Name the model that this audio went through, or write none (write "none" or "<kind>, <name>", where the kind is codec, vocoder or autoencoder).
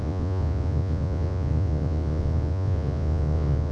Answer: vocoder, Vocos